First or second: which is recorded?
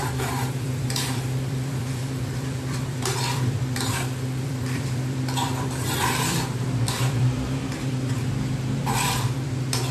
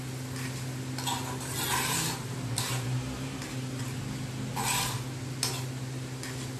second